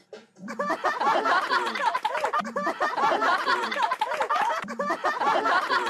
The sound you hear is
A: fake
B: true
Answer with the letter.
A